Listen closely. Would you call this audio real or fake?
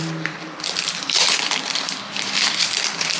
fake